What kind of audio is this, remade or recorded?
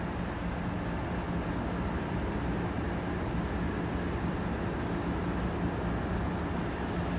recorded